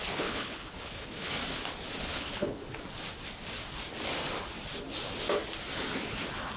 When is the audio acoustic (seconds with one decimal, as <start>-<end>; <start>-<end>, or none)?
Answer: 1.4-2.0; 2.6-6.6